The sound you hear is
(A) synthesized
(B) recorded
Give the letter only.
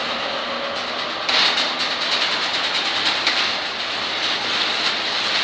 B